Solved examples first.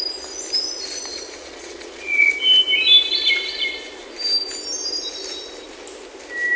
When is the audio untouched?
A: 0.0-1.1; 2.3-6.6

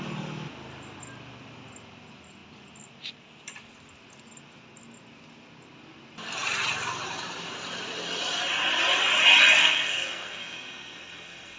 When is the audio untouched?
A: 0.0-9.6

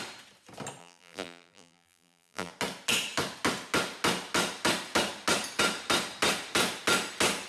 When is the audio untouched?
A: 0.0-0.8; 2.5-7.5

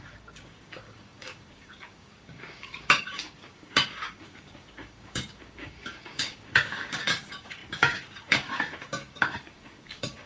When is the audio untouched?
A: none

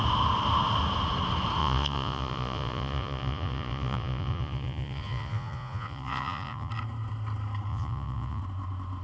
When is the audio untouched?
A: 0.0-1.6; 6.7-7.7; 8.4-9.0

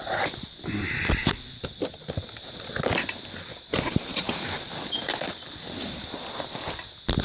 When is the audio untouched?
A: 0.0-7.2

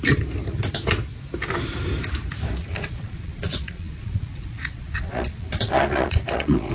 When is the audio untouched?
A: 0.0-2.6

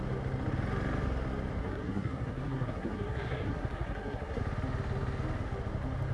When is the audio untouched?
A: 0.0-1.6; 4.4-6.1